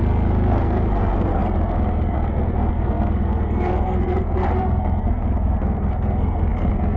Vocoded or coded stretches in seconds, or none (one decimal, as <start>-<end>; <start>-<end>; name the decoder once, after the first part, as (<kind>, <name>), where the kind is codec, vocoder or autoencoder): 0.0-7.0 (codec, SNAC)

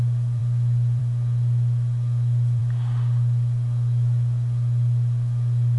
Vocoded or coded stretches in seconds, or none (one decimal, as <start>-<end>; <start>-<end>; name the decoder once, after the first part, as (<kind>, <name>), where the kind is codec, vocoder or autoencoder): none